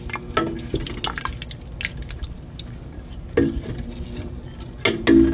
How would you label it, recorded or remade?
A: recorded